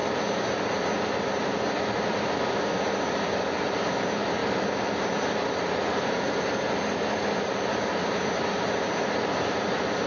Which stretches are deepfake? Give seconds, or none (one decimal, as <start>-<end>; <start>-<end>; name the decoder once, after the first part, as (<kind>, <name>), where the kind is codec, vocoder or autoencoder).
none